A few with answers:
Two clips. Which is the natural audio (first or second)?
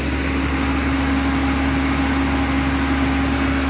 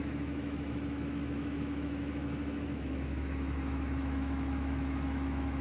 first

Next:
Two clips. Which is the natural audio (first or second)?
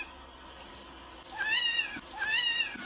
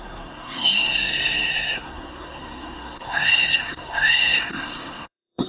first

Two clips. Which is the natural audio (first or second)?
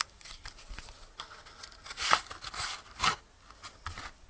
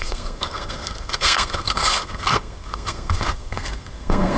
first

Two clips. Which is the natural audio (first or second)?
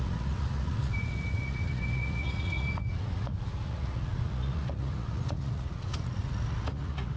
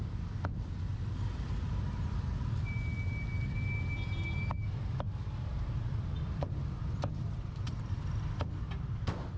second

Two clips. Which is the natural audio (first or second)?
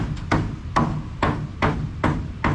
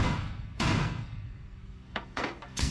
first